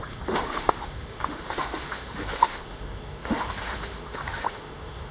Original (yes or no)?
no